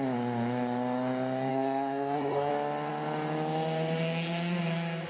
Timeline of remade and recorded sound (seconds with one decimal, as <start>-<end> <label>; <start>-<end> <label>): 0.0-1.5 recorded; 1.5-2.5 remade; 2.5-5.1 recorded